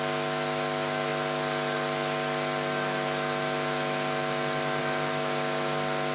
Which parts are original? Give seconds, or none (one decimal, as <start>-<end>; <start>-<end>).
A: 0.0-6.1